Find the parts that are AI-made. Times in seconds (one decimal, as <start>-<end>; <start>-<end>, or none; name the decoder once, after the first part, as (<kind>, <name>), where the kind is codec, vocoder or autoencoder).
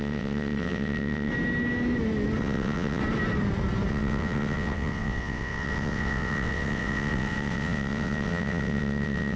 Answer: 0.0-1.3 (vocoder, WaveNeXt); 2.4-3.0; 3.9-9.4